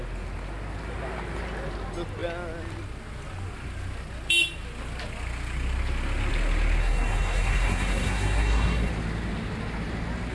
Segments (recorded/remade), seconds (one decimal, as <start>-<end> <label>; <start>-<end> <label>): 0.0-6.8 recorded; 6.8-8.9 remade; 8.9-10.3 recorded